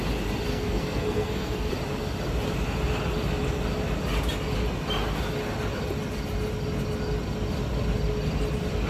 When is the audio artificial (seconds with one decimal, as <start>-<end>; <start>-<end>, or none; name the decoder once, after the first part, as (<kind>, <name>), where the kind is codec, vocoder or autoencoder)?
0.5-1.7 (codec, SNAC)